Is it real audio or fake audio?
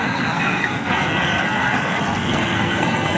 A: fake